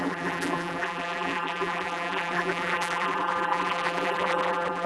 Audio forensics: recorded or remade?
remade